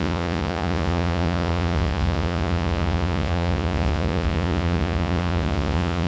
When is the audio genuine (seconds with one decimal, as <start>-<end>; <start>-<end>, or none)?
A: none